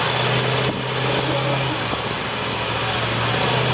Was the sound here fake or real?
real